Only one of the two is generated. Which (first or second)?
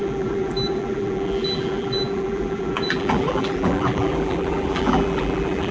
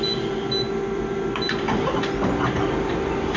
first